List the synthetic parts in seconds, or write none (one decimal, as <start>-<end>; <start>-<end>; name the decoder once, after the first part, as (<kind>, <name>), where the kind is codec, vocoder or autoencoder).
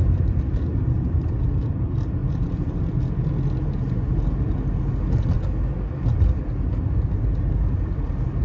0.0-1.4 (vocoder, BigVGAN v2); 2.2-2.8